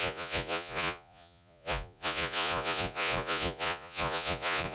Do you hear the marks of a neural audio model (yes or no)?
yes